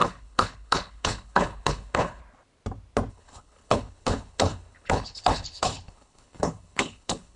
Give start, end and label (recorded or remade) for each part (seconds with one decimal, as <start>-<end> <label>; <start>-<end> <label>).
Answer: 0.0-2.2 remade; 2.2-3.1 recorded; 3.1-7.4 remade